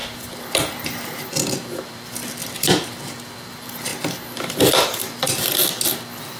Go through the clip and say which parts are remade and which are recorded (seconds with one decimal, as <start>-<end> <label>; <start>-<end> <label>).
0.0-2.0 remade; 2.0-2.4 recorded; 2.4-2.9 remade; 2.9-6.4 recorded